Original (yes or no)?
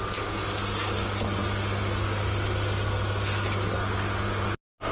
yes